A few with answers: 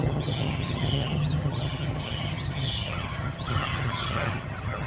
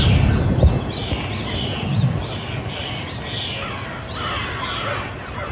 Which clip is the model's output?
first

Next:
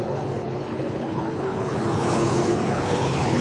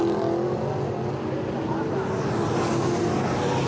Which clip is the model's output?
first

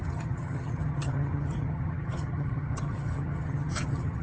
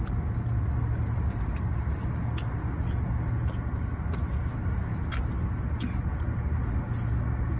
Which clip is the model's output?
first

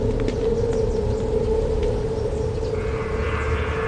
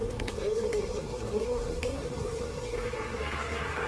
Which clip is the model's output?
second